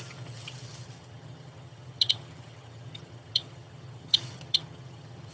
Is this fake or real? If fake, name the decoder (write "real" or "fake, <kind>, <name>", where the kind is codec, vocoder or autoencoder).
fake, vocoder, HiFi-GAN